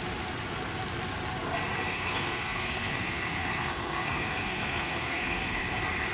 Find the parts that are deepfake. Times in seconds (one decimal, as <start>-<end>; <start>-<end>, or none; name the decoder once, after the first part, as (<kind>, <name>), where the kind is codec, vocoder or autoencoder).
1.9-5.6 (codec, SNAC)